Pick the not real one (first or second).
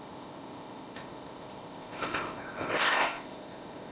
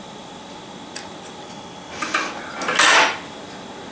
first